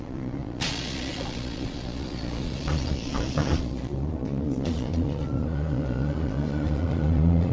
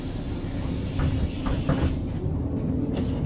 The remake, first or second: first